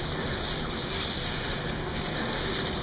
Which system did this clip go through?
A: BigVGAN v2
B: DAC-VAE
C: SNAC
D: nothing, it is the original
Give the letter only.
D